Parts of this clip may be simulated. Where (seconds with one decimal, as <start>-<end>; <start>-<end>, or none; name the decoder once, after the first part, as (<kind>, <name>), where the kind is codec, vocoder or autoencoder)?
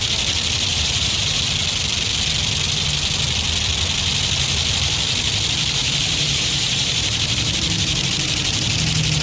0.7-1.3 (vocoder, BigVGAN v2); 5.8-8.1